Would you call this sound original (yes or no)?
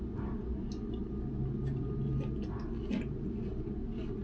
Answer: yes